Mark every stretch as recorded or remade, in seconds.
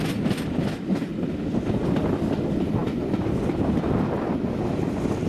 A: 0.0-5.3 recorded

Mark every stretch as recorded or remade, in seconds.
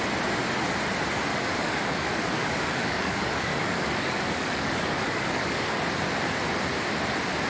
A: 0.0-1.3 recorded; 1.3-5.8 remade; 5.8-7.5 recorded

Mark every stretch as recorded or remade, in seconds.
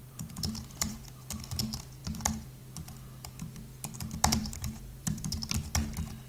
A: 0.0-1.0 remade; 1.0-4.4 recorded; 4.4-5.4 remade; 5.4-6.3 recorded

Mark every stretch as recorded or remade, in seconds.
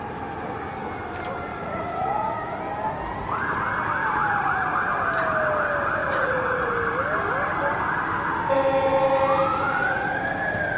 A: 0.0-1.5 recorded; 1.5-2.6 remade; 2.6-4.0 recorded; 4.0-4.8 remade; 4.8-6.0 recorded; 6.0-6.7 remade; 6.7-9.5 recorded; 9.5-10.2 remade; 10.2-10.8 recorded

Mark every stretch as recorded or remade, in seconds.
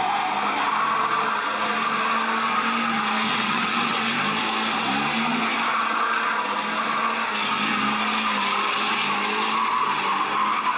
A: 0.0-3.3 recorded; 3.3-4.1 remade; 4.1-10.8 recorded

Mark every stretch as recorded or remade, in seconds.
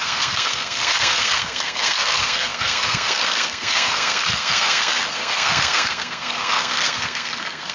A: 0.0-7.7 remade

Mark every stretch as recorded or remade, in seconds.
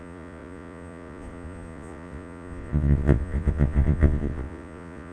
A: 0.0-5.1 remade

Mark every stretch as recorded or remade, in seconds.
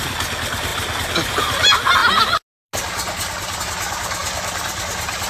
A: 0.0-5.3 recorded